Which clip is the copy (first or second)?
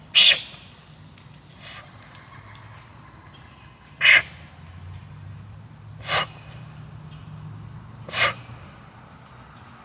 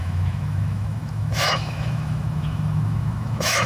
second